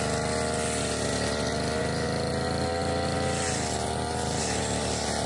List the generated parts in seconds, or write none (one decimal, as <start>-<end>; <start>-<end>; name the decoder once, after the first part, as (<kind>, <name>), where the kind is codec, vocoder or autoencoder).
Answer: none